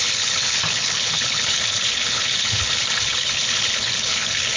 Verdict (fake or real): fake